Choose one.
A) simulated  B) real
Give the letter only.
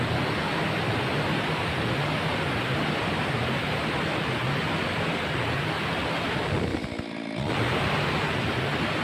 B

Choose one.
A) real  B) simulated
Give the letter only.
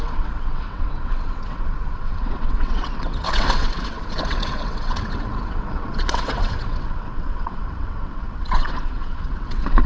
B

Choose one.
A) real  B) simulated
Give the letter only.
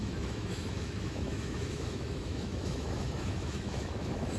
B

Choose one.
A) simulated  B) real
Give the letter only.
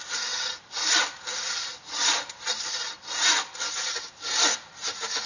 B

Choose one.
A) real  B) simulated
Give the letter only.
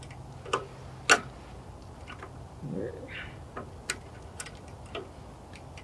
A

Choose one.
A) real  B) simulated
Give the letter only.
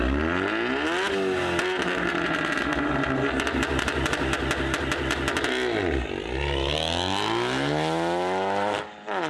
A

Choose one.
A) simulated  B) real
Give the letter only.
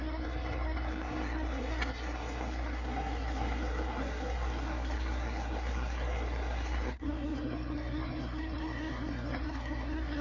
A